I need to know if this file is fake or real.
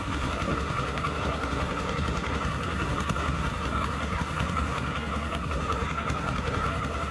fake